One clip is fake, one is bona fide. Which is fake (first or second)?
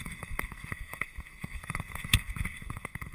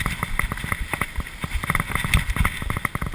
first